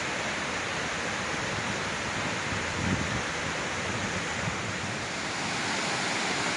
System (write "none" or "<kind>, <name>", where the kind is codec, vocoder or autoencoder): none